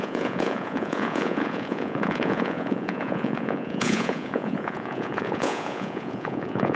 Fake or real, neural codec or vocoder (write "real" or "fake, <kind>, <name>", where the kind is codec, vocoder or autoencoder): fake, vocoder, Vocos